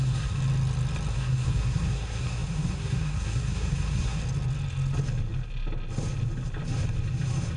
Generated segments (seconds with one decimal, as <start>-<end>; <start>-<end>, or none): 0.0-0.4; 1.1-4.2